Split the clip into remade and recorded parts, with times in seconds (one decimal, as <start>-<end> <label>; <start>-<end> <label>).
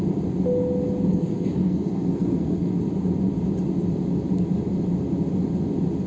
0.0-1.1 recorded; 1.1-2.8 remade; 2.8-6.1 recorded